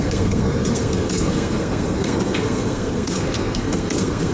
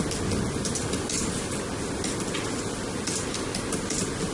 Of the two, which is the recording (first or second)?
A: second